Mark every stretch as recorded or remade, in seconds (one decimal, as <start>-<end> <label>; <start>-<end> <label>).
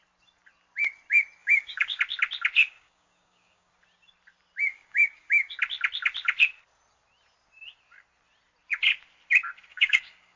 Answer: 0.0-1.4 recorded; 1.4-2.0 remade; 2.0-2.6 recorded; 2.6-3.7 remade; 3.7-4.7 recorded; 4.7-5.5 remade; 5.5-9.7 recorded; 9.7-10.4 remade